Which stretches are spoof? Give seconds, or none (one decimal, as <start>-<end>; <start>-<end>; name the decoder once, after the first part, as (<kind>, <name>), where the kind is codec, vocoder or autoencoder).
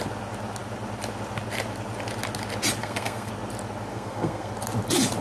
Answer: 2.8-3.3 (codec, SNAC); 3.9-4.5